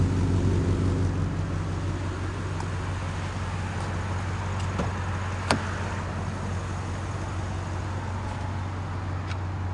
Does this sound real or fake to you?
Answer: real